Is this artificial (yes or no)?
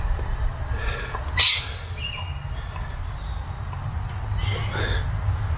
no